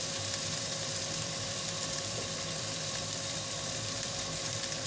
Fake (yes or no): yes